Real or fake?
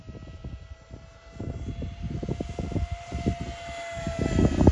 real